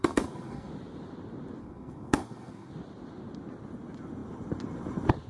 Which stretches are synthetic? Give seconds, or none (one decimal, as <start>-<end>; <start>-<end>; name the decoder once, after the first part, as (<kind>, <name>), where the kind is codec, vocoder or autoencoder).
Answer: 0.0-0.7 (codec, SNAC); 1.6-2.7